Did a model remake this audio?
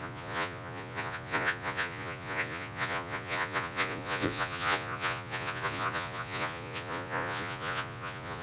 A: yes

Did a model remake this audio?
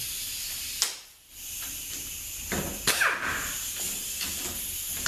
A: no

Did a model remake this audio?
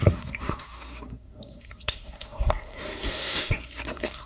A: yes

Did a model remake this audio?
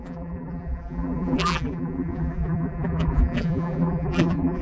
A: yes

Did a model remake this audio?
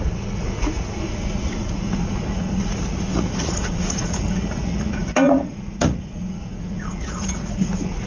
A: yes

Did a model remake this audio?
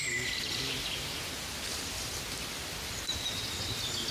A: no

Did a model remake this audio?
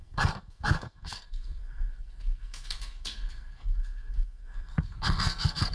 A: yes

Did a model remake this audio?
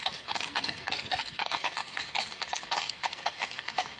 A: yes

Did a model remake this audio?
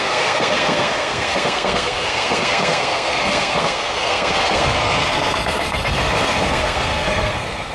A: yes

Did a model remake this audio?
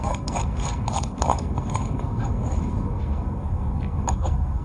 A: yes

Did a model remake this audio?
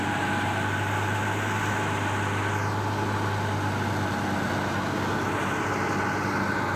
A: no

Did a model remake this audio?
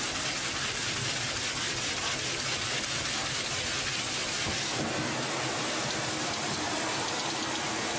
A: no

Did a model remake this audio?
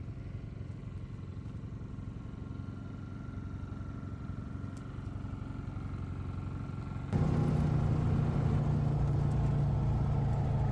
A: no